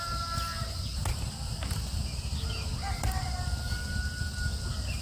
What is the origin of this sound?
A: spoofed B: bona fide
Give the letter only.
B